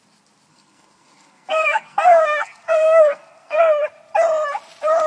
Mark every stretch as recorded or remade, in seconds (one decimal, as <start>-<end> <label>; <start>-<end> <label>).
0.0-0.5 recorded; 0.5-3.6 remade; 3.6-5.1 recorded